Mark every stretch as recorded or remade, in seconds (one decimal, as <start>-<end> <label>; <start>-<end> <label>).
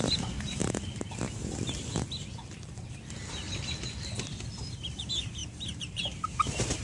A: 0.0-0.6 remade; 0.6-4.5 recorded; 4.5-6.8 remade